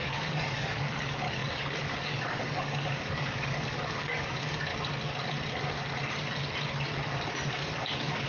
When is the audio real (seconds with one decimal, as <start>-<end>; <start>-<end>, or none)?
4.7-7.5